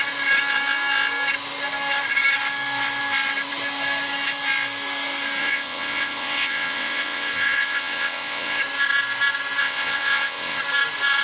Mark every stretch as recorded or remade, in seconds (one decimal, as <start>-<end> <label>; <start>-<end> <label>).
0.0-5.4 recorded; 5.4-8.6 remade; 8.6-9.6 recorded; 9.6-10.6 remade; 10.6-11.2 recorded

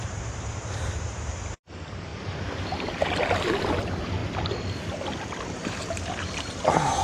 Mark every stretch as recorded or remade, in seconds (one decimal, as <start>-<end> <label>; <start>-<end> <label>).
0.0-2.1 remade; 2.1-3.8 recorded; 3.8-4.2 remade; 4.2-5.4 recorded; 5.4-7.0 remade

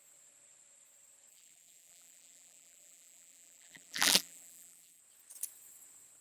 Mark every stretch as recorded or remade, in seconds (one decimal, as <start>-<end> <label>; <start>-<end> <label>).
0.0-1.3 recorded; 1.3-5.0 remade; 5.0-6.2 recorded

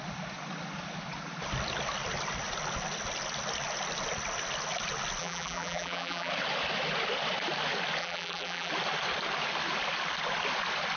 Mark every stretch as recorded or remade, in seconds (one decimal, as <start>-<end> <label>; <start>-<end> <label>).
0.0-5.2 recorded; 5.2-6.3 remade; 6.3-8.0 recorded; 8.0-8.7 remade; 8.7-11.0 recorded

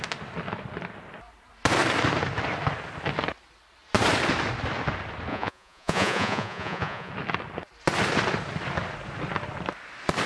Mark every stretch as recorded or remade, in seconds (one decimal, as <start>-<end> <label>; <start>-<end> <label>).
0.0-5.3 recorded; 5.3-7.1 remade; 7.1-10.3 recorded

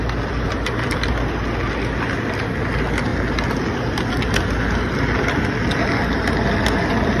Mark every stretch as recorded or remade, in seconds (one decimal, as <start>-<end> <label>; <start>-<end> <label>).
0.0-7.2 recorded

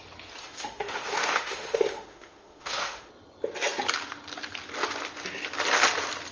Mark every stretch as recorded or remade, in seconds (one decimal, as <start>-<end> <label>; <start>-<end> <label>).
0.0-0.4 recorded; 0.4-3.1 remade; 3.1-6.3 recorded